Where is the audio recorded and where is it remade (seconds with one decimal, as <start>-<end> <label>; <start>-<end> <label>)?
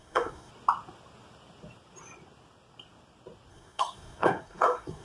0.0-0.5 remade; 0.5-3.5 recorded; 3.5-5.0 remade